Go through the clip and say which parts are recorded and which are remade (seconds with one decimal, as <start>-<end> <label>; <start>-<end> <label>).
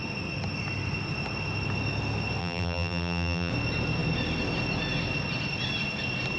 0.0-2.4 recorded; 2.4-3.5 remade; 3.5-6.4 recorded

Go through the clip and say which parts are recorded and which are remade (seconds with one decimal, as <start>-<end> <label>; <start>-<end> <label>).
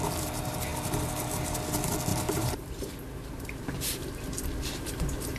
0.0-2.1 recorded; 2.1-5.4 remade